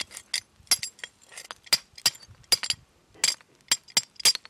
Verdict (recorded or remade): recorded